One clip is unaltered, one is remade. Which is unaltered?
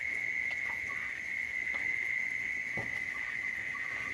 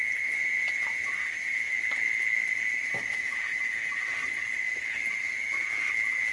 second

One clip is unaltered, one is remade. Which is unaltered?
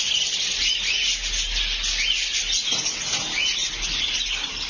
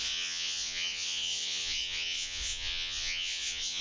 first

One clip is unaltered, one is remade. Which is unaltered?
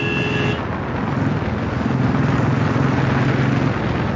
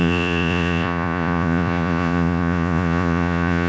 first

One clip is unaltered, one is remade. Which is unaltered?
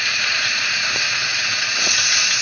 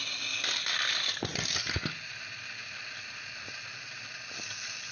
second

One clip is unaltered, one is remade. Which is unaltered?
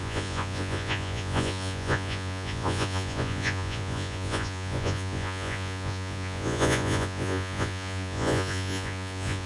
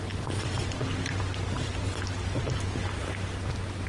second